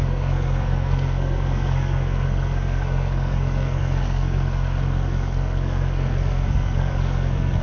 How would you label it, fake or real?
fake